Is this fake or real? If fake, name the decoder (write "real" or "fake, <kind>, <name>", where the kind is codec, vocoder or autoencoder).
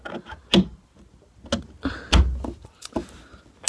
real